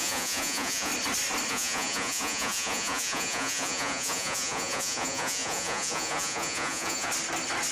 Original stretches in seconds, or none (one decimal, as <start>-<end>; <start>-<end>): 0.9-1.5; 7.1-7.7